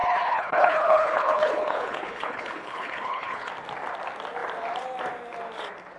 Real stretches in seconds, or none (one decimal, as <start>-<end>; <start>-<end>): 3.5-6.0